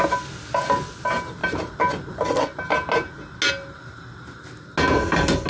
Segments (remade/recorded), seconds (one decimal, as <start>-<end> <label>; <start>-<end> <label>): 0.0-5.5 recorded